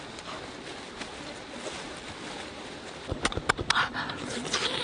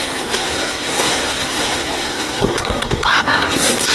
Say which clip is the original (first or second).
first